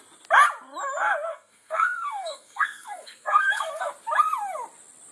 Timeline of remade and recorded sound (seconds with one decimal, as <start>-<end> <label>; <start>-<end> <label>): 0.0-1.3 recorded; 1.3-3.9 remade; 3.9-5.1 recorded